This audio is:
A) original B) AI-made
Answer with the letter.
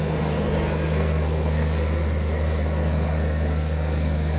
B